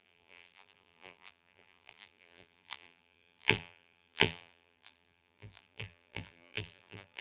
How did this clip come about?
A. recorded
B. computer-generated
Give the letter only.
B